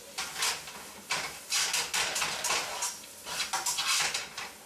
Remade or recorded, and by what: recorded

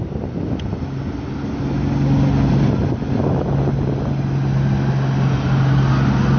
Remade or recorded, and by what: recorded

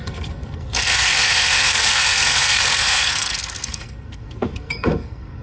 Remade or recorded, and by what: remade, codec, SNAC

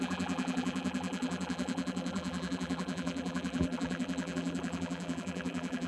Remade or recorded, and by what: remade, vocoder, BigVGAN v2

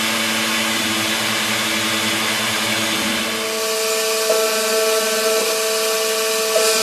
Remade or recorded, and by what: recorded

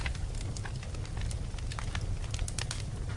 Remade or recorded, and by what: recorded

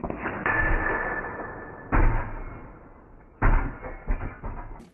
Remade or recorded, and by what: recorded